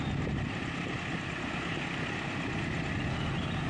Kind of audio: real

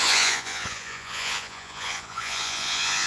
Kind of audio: fake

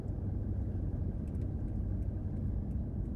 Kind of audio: real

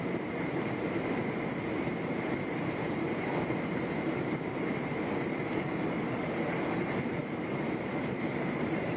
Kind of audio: fake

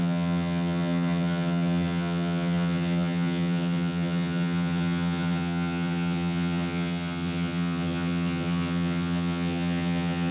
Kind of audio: fake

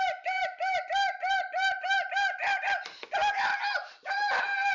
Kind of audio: real